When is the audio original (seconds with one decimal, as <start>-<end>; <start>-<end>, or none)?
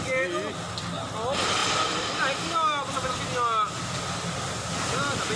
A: 0.0-5.4